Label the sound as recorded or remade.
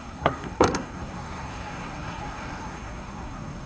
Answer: remade